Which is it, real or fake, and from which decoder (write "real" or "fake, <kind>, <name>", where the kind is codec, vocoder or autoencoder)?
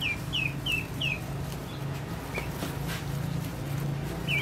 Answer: real